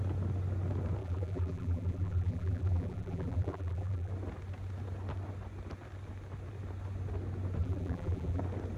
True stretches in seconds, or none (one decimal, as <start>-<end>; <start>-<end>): 0.0-1.0; 4.1-7.6; 8.4-8.8